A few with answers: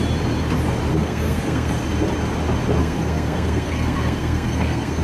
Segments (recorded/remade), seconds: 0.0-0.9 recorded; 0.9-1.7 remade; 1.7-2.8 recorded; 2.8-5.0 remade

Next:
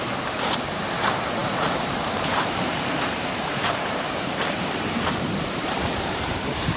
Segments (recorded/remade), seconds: 0.0-6.8 remade

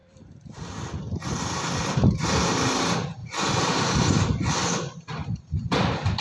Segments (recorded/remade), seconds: 0.0-2.4 remade; 2.4-3.2 recorded; 3.2-3.8 remade; 3.8-4.6 recorded; 4.6-6.2 remade

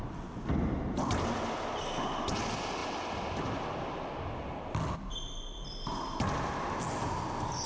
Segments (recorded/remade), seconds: 0.0-7.7 recorded

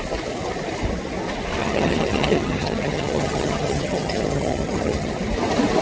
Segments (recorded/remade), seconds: 0.0-1.6 recorded; 1.6-5.1 remade; 5.1-5.8 recorded

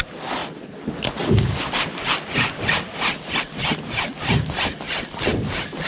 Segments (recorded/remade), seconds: 0.0-5.9 recorded

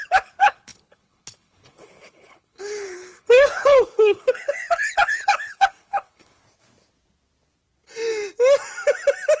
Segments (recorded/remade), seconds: 0.0-6.4 remade; 6.4-9.4 recorded